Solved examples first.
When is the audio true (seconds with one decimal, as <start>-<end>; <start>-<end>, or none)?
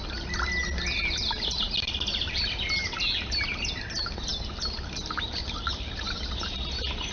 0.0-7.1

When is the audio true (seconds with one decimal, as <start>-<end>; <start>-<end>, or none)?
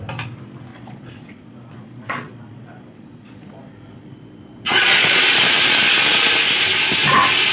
0.0-0.7; 5.2-7.5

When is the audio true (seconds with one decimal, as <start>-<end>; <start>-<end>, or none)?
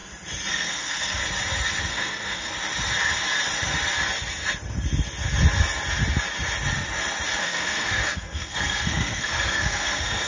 0.0-0.5; 1.2-1.9; 2.5-7.4